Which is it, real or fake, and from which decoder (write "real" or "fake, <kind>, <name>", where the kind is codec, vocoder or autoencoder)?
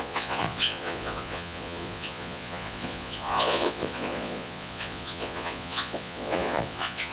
fake, vocoder, Vocos